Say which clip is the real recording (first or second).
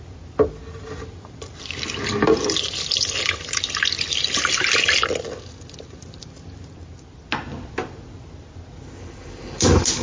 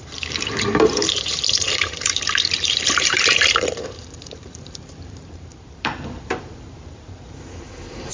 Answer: first